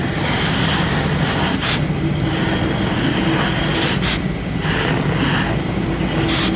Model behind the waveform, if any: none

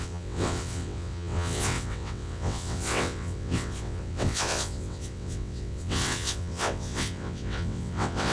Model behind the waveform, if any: vocoder, WaveNeXt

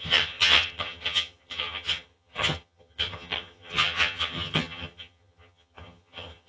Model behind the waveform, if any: vocoder, HiFi-GAN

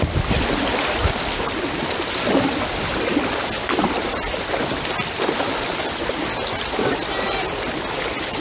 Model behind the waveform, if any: none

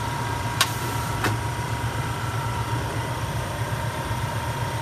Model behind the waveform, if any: vocoder, BigVGAN v2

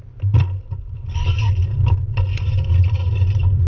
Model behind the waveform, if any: none